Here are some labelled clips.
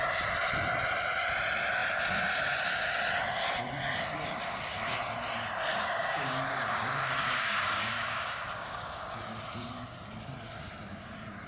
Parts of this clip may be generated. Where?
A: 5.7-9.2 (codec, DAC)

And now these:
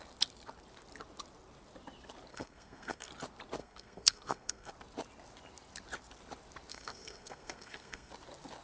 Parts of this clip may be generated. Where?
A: 2.3-3.1 (codec, SNAC); 3.6-4.7; 6.7-8.1